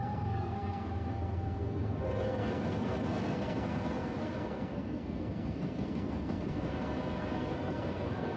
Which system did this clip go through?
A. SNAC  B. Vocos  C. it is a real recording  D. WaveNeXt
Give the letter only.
A